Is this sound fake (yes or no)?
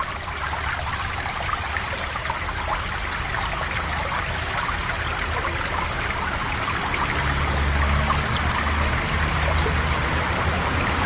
no